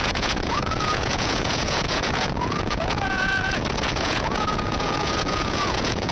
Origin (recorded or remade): remade